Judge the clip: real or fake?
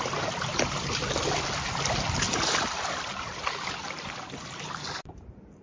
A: real